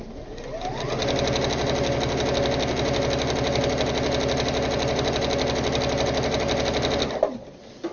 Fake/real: real